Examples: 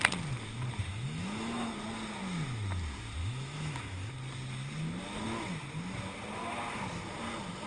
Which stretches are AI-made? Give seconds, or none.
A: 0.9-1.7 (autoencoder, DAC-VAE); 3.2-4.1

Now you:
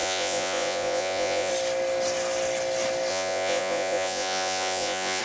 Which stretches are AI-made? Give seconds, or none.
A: 0.0-1.5 (vocoder, Vocos); 3.1-5.2

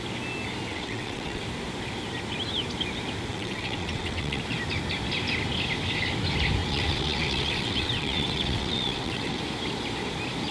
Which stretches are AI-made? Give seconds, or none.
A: 0.7-1.4 (vocoder, WaveNeXt); 3.3-4.4; 6.6-9.4

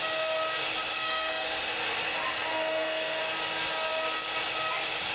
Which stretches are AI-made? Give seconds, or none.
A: 0.9-1.6 (codec, SNAC); 2.5-3.2

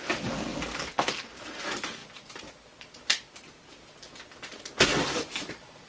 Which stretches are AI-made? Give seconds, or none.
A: 0.0-0.5 (vocoder, BigVGAN v2); 1.2-2.0; 5.5-5.9